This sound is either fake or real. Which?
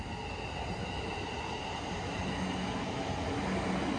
real